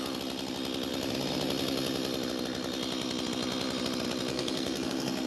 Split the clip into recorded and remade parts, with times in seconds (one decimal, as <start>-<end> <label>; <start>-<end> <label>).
0.0-4.3 recorded; 4.3-5.3 remade